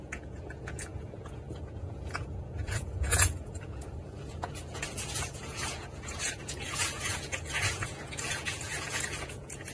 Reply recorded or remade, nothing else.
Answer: remade